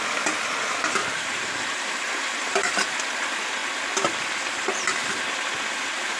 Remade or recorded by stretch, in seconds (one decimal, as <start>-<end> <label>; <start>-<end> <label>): 0.0-1.0 recorded; 1.0-2.7 remade; 2.7-6.2 recorded